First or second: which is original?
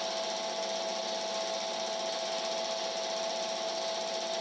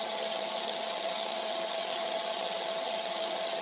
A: first